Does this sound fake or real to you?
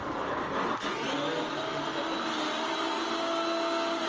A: real